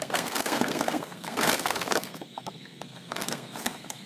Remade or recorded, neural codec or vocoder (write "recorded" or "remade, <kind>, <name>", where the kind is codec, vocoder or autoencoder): remade, codec, SNAC